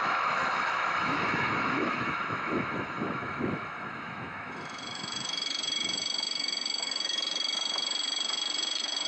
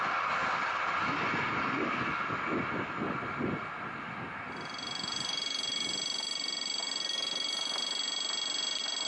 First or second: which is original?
second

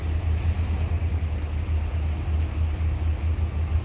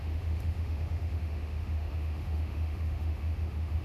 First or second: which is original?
first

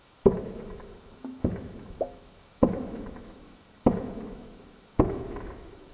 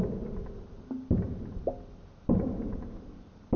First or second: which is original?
second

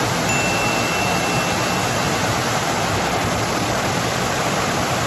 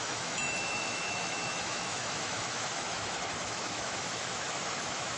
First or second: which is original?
first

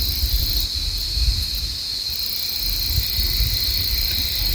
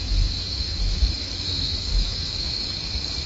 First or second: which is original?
first